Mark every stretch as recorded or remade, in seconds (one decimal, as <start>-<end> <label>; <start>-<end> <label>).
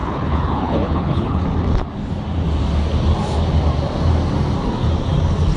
0.0-1.4 remade; 1.4-5.6 recorded